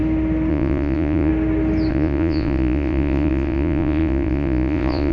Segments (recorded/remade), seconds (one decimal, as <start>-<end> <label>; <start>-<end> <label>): 0.0-0.5 recorded; 0.5-1.3 remade; 1.3-1.9 recorded; 1.9-5.1 remade